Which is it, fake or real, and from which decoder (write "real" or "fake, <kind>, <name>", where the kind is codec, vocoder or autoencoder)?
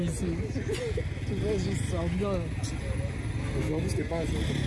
real